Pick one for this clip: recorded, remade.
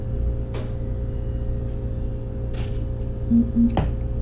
recorded